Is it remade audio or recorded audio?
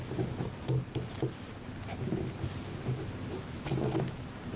recorded